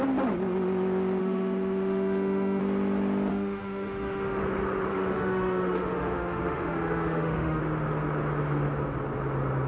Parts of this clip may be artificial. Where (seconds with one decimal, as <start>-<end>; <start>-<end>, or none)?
1.2-2.6; 3.3-4.4; 4.9-7.6